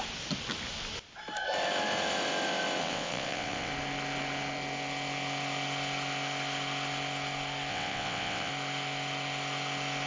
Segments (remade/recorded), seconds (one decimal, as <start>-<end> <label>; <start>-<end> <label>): 0.0-2.8 recorded; 2.8-3.7 remade; 3.7-7.7 recorded; 7.7-8.5 remade; 8.5-10.1 recorded